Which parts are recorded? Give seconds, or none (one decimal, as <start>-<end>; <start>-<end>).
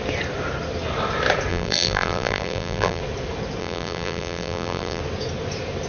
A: 0.0-1.5; 3.0-3.6; 5.0-5.9